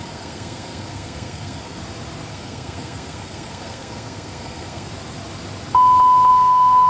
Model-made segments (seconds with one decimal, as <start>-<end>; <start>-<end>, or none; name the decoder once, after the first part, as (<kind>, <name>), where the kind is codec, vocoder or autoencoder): 0.0-1.8 (codec, SNAC); 2.3-4.9; 6.3-6.9